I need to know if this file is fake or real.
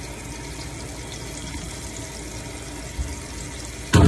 real